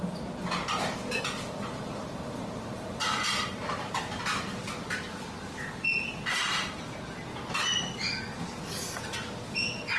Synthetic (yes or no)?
no